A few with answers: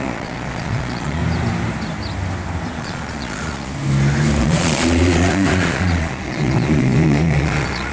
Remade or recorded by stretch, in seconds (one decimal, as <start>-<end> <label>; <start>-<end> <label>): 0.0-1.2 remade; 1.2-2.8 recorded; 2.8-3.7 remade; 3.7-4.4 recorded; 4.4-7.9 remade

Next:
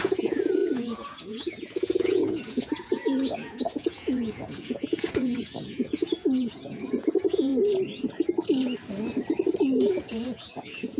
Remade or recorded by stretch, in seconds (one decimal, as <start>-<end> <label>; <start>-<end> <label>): 0.0-7.5 remade; 7.5-9.9 recorded; 9.9-11.0 remade

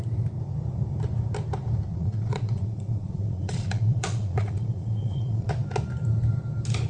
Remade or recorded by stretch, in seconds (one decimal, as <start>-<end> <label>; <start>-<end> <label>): 0.0-1.9 recorded; 1.9-5.5 remade; 5.5-6.9 recorded

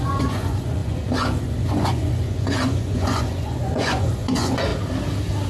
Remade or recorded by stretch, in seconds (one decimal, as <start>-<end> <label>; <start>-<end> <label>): 0.0-4.7 remade; 4.7-5.5 recorded

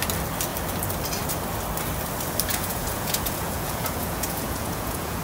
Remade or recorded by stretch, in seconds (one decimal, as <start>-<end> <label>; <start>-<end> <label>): 0.0-2.5 recorded; 2.5-5.2 remade